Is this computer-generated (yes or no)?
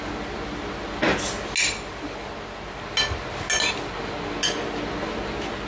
no